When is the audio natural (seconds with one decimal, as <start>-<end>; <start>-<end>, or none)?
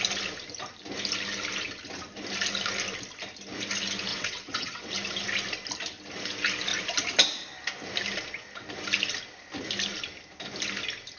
0.0-4.1; 4.9-11.2